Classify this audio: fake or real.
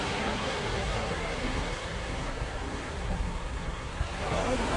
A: fake